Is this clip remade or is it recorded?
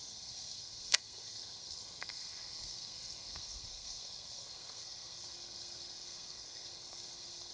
remade